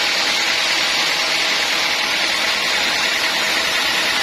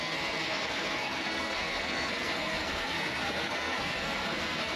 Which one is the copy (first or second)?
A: second